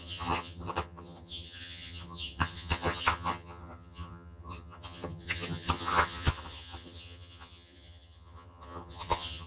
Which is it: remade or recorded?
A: remade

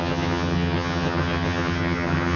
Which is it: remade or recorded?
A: remade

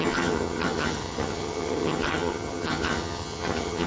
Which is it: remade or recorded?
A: remade